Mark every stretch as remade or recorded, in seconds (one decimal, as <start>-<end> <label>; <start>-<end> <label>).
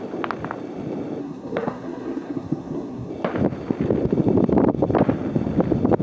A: 0.0-1.2 recorded; 1.2-3.1 remade; 3.1-6.0 recorded